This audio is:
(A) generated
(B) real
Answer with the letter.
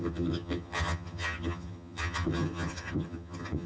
A